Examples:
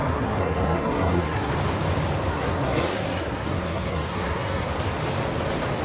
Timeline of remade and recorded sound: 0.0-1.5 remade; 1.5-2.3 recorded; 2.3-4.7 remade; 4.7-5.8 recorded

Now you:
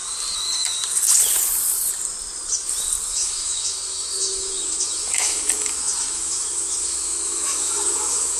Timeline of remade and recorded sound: 0.0-3.1 recorded; 3.1-8.4 remade

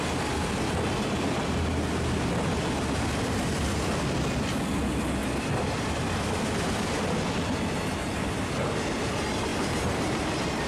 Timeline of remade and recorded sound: 0.0-9.5 recorded; 9.5-10.2 remade; 10.2-10.7 recorded